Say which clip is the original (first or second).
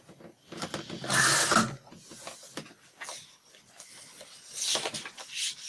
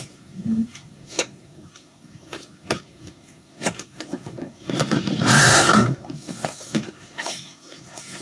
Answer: first